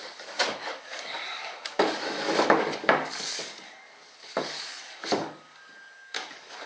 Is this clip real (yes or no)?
no